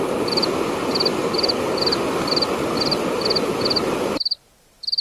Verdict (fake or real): real